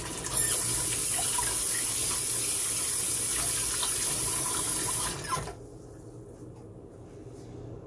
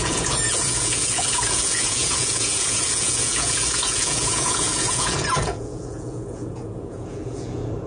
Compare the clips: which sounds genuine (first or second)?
first